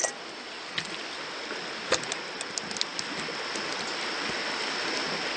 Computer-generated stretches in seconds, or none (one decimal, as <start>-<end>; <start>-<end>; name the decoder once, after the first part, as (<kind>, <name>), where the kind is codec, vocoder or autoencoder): none